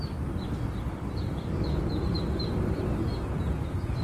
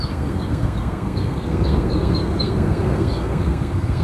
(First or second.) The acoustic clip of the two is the first